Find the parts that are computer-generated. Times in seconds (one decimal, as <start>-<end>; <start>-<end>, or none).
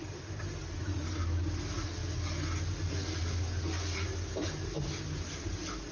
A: none